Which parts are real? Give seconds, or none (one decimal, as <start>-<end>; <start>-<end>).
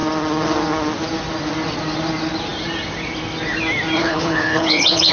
0.0-4.0